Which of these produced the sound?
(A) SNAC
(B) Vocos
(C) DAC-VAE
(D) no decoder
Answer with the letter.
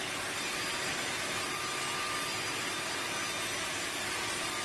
D